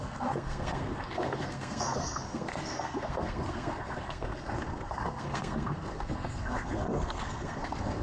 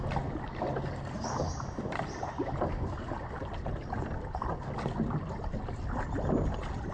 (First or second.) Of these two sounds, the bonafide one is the second